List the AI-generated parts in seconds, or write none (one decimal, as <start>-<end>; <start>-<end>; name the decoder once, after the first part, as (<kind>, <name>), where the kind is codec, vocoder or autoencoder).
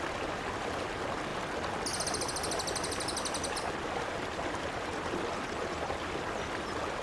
none